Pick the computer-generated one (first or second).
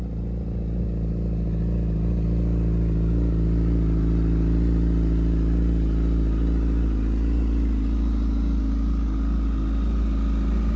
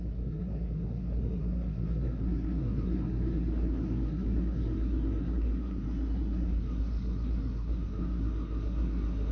second